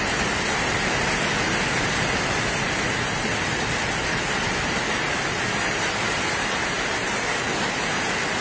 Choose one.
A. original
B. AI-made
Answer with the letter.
A